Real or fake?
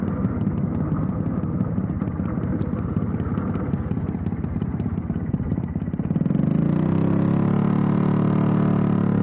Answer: real